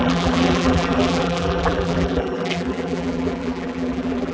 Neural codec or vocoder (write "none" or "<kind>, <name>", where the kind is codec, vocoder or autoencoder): vocoder, BigVGAN v2